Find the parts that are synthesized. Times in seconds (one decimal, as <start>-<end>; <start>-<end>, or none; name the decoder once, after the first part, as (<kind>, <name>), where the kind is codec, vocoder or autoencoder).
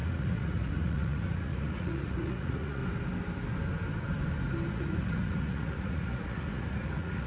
0.0-2.8 (vocoder, Vocos); 4.7-7.3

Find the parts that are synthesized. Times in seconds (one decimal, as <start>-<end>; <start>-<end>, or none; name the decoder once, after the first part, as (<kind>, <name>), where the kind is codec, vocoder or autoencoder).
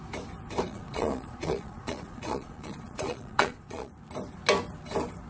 0.7-3.9 (vocoder, Vocos)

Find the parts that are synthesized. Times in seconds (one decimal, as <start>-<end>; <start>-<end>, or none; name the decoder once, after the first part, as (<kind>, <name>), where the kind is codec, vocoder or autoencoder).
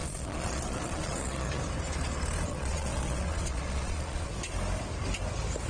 0.0-1.6 (vocoder, Vocos); 2.5-4.3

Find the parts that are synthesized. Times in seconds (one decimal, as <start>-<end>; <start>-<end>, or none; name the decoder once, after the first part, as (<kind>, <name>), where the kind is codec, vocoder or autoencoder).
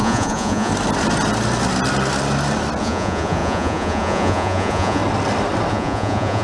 0.0-0.7 (vocoder, Vocos); 2.8-5.0; 5.7-6.4